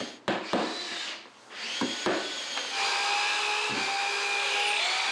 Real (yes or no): yes